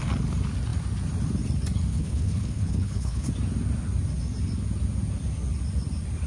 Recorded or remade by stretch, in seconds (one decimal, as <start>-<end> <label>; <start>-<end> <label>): 0.0-1.9 recorded; 1.9-3.3 remade; 3.3-6.3 recorded